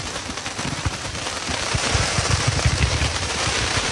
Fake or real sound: fake